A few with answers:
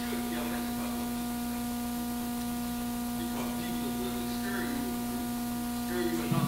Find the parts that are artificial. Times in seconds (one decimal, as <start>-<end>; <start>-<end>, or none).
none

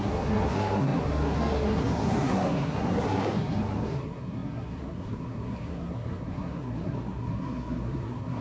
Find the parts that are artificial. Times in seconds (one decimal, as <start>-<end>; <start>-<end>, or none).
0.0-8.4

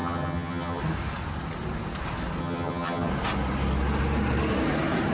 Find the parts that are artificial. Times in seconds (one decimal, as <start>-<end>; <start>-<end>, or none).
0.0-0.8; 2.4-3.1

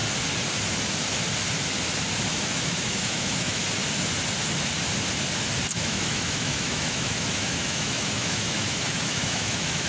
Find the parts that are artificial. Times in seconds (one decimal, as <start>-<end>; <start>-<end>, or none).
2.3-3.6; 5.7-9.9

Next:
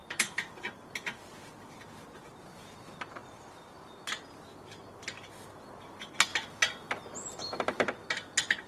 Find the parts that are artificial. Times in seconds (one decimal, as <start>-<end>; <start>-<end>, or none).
0.0-0.8; 6.3-7.8